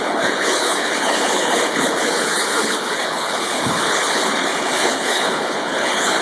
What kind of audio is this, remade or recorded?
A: remade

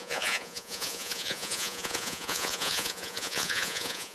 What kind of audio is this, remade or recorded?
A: remade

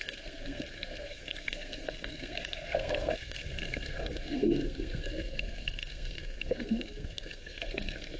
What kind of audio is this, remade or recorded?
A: remade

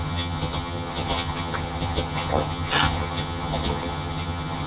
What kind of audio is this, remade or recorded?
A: remade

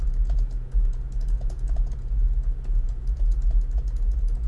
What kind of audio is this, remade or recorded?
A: remade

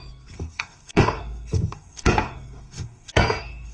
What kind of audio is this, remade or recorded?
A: remade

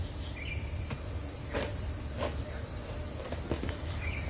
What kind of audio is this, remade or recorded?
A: recorded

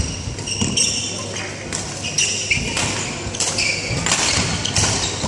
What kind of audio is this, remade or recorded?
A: recorded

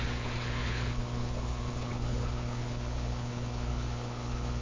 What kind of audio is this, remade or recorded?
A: remade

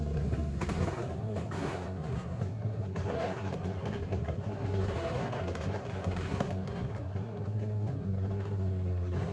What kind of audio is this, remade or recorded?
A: remade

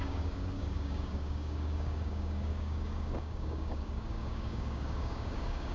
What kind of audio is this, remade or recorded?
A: remade